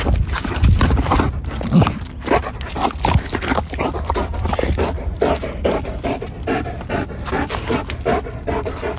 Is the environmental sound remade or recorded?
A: recorded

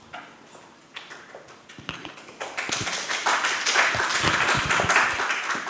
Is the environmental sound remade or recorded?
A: recorded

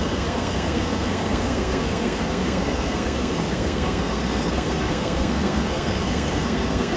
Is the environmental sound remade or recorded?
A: remade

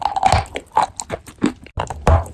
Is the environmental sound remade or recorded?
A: recorded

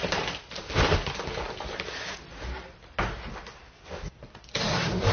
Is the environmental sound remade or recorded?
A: recorded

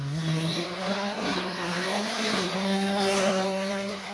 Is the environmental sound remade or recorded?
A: remade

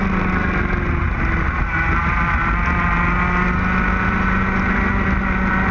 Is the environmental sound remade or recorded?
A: recorded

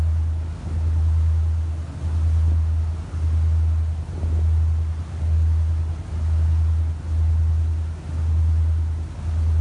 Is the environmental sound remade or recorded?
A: recorded